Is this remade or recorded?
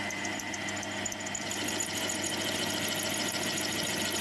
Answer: recorded